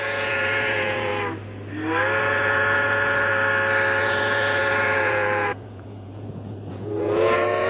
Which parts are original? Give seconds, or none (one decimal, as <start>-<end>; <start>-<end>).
1.1-2.2; 3.3-4.0